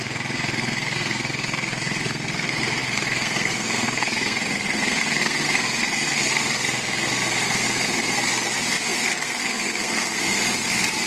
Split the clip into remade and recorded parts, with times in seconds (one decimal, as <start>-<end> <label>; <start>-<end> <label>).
0.0-11.1 remade